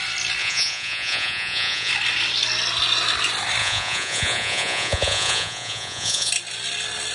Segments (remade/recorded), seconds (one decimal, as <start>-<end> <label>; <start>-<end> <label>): 0.0-0.4 recorded; 0.4-1.9 remade; 1.9-3.6 recorded; 3.6-6.3 remade; 6.3-7.1 recorded

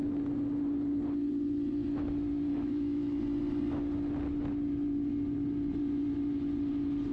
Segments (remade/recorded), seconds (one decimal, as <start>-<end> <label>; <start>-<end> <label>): 0.0-2.5 recorded; 2.5-3.2 remade; 3.2-7.1 recorded

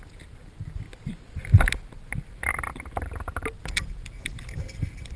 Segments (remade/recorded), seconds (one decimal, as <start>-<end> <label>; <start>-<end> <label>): 0.0-5.2 recorded

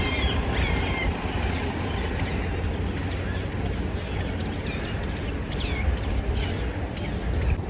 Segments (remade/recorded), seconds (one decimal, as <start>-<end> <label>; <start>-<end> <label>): 0.0-7.7 recorded